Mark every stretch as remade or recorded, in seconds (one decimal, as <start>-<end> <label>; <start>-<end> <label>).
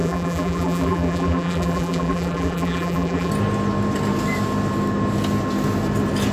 0.0-3.3 remade; 3.3-6.3 recorded